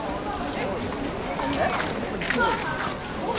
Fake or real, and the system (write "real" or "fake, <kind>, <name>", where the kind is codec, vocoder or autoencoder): real